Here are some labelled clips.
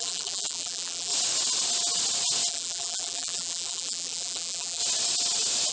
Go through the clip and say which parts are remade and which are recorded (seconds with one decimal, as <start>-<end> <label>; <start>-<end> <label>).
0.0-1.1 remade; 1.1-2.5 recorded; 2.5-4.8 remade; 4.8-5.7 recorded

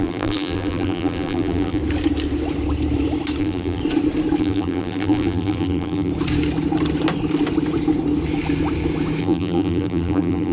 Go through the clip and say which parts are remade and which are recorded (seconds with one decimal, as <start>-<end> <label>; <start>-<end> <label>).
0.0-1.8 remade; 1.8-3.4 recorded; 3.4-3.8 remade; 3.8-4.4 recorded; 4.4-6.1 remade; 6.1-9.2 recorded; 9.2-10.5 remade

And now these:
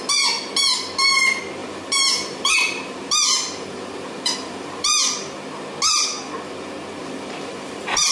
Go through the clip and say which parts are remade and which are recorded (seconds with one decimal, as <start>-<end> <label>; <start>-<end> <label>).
0.0-1.6 recorded; 1.6-4.9 remade; 4.9-7.0 recorded; 7.0-8.1 remade

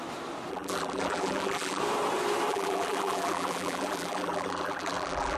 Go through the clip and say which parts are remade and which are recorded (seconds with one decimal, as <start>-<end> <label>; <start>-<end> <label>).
0.0-0.5 recorded; 0.5-1.8 remade; 1.8-2.5 recorded; 2.5-5.4 remade